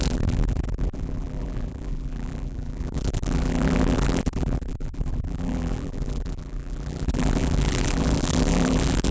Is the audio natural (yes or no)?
no